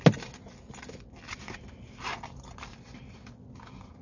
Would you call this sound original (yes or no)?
yes